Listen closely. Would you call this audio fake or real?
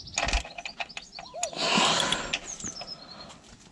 real